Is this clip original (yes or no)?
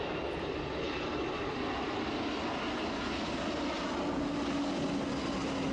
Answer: yes